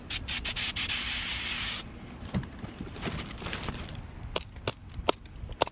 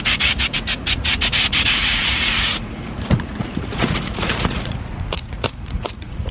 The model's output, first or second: second